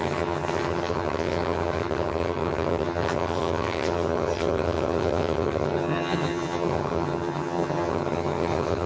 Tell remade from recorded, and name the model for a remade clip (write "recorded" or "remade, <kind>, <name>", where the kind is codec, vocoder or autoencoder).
remade, vocoder, HiFi-GAN